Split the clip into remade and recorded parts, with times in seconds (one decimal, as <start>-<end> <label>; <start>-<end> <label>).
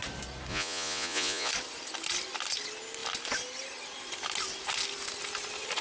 0.0-0.5 recorded; 0.5-1.5 remade; 1.5-5.8 recorded